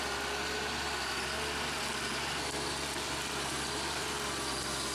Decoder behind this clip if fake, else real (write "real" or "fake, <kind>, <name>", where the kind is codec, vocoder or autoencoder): real